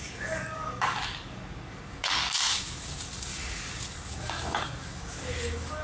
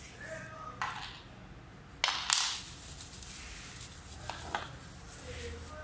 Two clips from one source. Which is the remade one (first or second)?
first